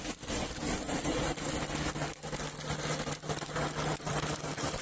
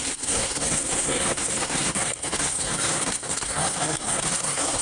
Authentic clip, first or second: first